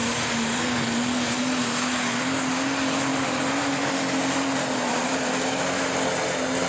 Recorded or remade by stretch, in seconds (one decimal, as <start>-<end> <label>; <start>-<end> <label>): 0.0-0.6 remade; 0.6-3.1 recorded; 3.1-3.9 remade; 3.9-4.9 recorded; 4.9-5.9 remade; 5.9-6.7 recorded